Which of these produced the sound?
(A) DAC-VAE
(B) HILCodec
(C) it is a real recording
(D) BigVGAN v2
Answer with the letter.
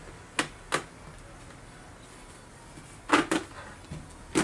C